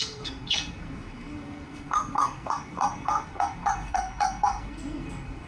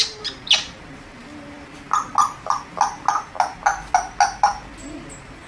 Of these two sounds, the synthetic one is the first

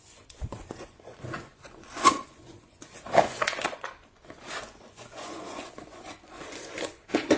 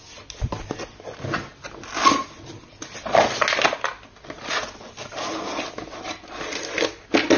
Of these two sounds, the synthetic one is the first